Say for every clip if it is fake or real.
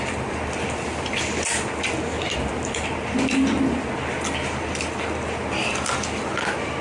real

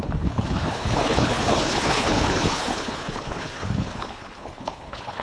fake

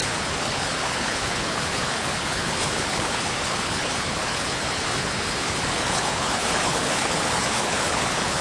fake